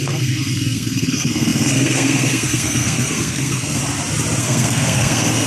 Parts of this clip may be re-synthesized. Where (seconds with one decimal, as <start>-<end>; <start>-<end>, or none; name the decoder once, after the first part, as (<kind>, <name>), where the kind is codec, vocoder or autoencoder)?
0.0-3.8 (codec, SNAC); 4.4-5.5